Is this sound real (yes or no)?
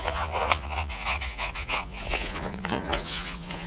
no